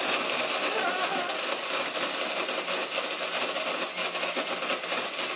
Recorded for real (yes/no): yes